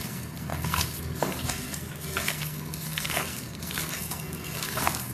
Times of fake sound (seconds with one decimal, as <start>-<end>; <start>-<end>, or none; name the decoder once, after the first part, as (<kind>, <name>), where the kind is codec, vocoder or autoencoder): 0.0-5.1 (codec, SNAC)